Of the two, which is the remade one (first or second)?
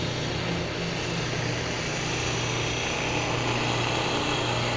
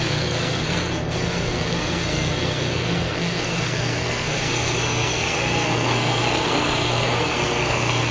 second